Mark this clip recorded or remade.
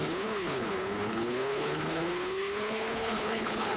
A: remade